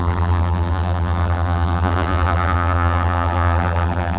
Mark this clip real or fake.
fake